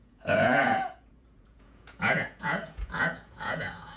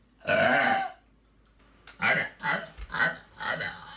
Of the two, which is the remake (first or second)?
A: first